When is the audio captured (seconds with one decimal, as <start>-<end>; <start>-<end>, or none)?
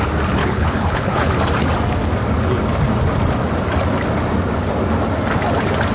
0.0-0.4; 1.3-5.9